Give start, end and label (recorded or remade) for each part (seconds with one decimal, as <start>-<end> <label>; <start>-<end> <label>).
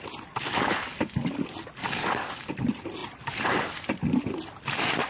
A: 0.0-1.8 recorded; 1.8-2.5 remade; 2.5-5.1 recorded